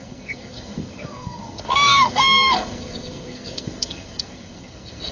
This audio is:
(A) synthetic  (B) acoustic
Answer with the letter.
A